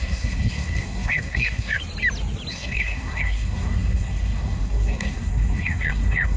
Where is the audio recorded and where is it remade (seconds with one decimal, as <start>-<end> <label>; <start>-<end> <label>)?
0.0-1.8 remade; 1.8-2.5 recorded; 2.5-6.4 remade